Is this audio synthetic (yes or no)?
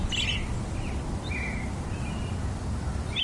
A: no